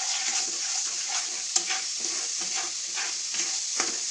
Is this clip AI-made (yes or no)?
no